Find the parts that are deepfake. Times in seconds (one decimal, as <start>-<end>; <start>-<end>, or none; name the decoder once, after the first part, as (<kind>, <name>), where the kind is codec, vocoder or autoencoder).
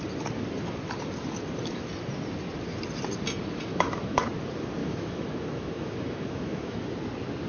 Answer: 3.7-4.2 (autoencoder, DAC-VAE); 4.8-6.8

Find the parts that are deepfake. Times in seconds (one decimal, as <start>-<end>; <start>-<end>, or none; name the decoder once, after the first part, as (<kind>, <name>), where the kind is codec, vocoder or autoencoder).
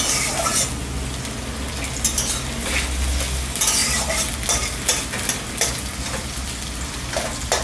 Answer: none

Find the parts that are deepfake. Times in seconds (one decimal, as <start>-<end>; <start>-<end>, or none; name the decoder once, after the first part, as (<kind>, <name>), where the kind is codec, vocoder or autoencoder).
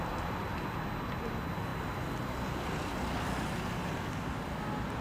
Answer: none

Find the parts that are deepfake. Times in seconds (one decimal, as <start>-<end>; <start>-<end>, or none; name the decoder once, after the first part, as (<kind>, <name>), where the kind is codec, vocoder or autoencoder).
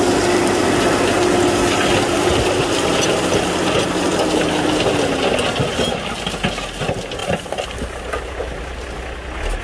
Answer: none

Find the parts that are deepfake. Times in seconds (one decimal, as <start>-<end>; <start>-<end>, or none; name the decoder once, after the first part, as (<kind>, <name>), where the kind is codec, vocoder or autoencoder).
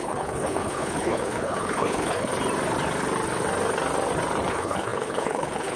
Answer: 0.0-2.3 (codec, HILCodec); 4.5-5.8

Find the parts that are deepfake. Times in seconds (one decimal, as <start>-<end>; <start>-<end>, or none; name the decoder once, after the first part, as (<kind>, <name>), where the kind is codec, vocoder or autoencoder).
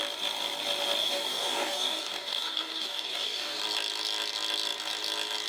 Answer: 1.0-3.6 (codec, DAC)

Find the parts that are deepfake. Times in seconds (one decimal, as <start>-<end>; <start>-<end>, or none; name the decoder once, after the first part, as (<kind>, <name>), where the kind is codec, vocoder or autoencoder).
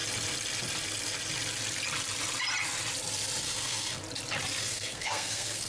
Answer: 3.4-4.0 (codec, SNAC); 4.6-5.7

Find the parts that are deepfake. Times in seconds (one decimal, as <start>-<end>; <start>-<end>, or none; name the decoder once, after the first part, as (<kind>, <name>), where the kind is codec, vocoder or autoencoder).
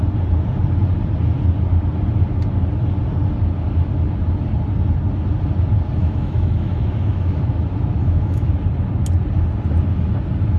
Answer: 6.0-7.4 (autoencoder, DAC-VAE); 8.0-8.5